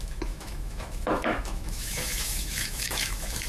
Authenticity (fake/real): fake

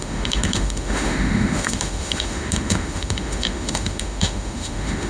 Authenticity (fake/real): fake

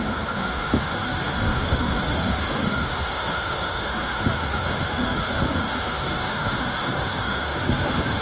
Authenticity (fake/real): fake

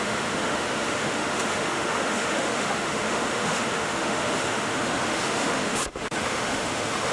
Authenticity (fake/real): fake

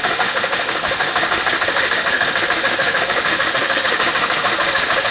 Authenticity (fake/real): fake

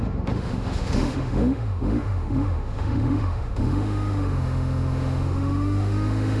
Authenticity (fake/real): fake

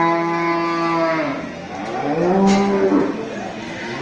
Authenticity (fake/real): real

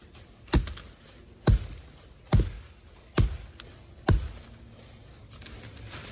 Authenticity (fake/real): real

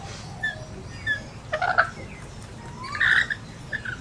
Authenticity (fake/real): real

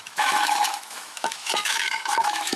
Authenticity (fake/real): fake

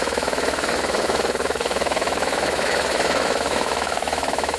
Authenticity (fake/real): fake